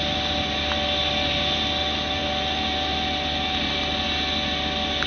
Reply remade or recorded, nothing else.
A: recorded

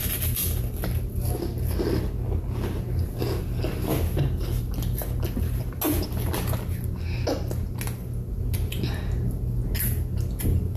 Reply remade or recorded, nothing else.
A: recorded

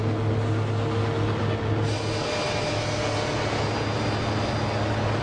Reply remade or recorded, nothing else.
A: recorded